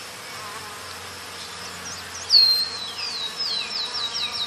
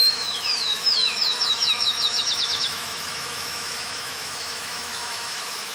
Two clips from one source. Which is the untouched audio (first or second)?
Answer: first